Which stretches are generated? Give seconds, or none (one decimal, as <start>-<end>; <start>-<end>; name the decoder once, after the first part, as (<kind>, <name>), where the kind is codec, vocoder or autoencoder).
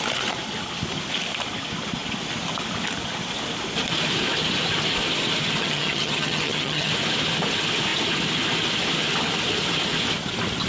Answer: 5.6-6.9 (vocoder, HiFi-GAN)